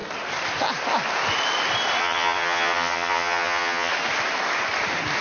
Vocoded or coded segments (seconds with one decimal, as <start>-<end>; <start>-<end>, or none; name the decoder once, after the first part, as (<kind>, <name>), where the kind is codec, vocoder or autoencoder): 2.0-3.9 (vocoder, HiFi-GAN)